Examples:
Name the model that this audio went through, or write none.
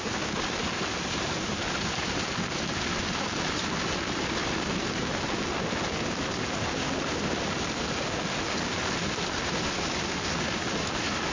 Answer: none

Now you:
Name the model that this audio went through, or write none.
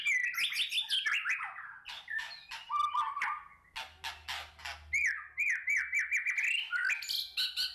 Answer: none